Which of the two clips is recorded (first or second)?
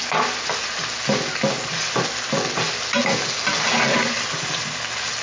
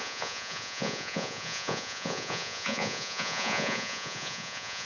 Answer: first